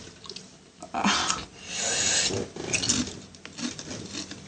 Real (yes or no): yes